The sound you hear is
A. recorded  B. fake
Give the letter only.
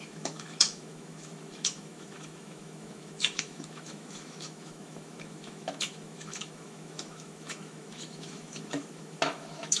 B